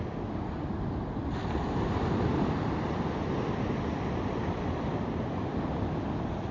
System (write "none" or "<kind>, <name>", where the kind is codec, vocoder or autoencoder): none